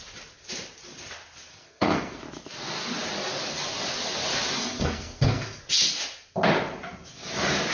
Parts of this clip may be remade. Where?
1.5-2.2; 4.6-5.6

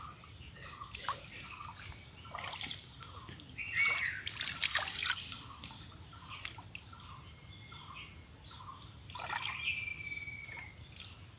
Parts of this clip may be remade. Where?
none

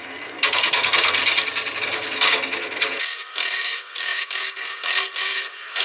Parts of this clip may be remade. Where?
0.0-1.2; 1.8-5.8

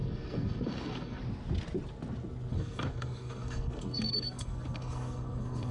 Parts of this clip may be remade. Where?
0.0-1.2; 2.5-5.7